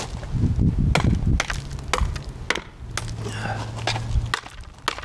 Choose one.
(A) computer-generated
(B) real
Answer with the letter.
B